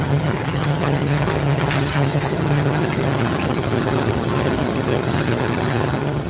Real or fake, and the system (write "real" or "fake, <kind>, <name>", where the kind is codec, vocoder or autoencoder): fake, vocoder, HiFi-GAN